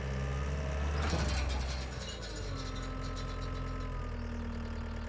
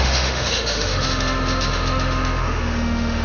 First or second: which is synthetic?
second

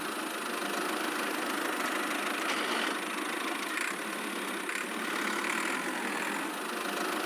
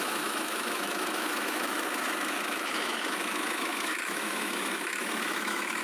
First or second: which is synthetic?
second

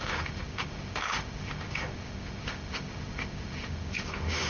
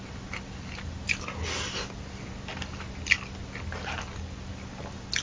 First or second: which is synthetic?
first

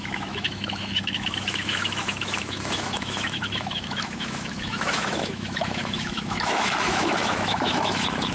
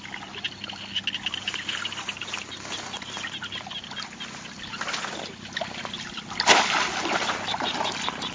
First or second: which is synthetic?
first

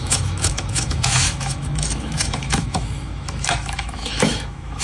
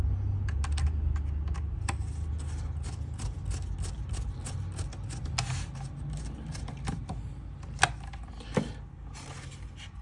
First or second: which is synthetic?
first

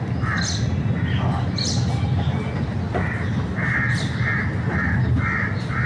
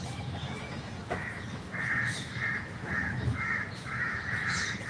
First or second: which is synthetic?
second